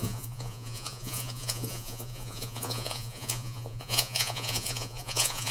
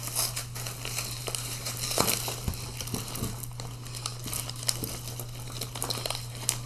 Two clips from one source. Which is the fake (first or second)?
first